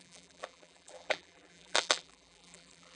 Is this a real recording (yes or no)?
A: no